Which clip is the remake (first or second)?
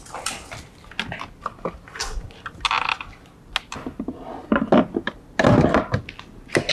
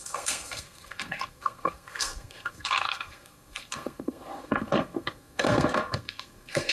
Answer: second